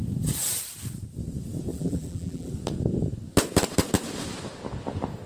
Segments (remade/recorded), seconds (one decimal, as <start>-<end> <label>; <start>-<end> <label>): 0.0-1.7 recorded; 1.7-2.5 remade; 2.5-5.3 recorded